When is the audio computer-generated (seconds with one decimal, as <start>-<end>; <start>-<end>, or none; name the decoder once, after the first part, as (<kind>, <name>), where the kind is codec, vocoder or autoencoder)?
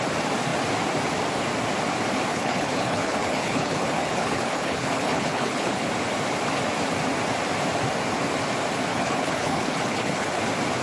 2.3-5.9 (codec, HILCodec); 8.9-10.4